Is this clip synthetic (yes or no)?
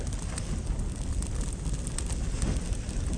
no